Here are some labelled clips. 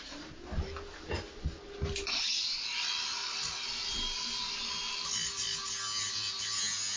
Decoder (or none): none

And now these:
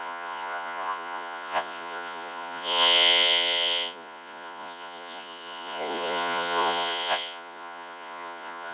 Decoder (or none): vocoder, Vocos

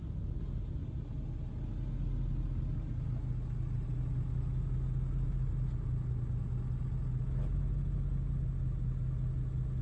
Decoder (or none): none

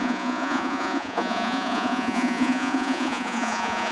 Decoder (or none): vocoder, Vocos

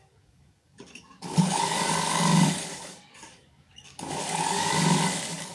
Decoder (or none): codec, DAC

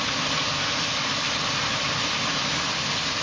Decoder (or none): none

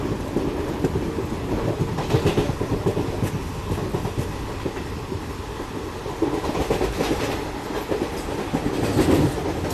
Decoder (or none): none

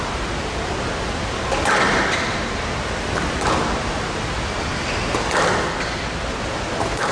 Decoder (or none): none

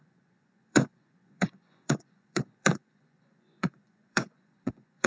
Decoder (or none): vocoder, Vocos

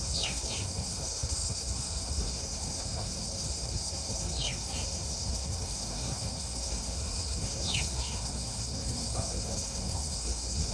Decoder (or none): codec, SNAC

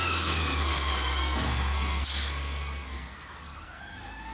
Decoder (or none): codec, SNAC